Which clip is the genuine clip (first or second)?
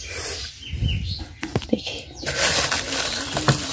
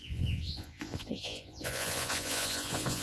first